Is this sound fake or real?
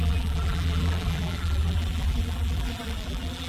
fake